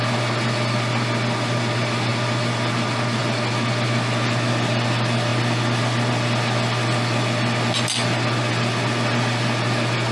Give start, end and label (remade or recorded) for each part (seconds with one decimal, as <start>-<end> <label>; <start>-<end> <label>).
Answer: 0.0-10.1 recorded